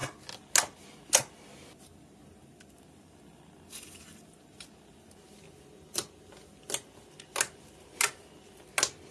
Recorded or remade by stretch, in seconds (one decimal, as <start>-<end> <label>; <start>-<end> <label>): 0.0-9.1 recorded